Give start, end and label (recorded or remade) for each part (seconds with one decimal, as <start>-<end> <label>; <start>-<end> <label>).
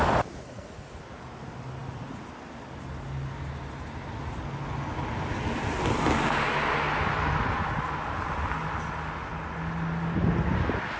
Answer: 0.0-0.4 recorded; 0.4-1.0 remade; 1.0-11.0 recorded